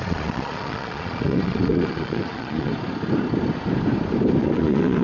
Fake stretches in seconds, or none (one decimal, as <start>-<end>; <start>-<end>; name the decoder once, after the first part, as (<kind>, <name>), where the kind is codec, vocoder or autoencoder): 0.0-2.7 (vocoder, Vocos); 4.4-5.0